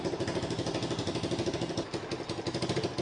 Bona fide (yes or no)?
yes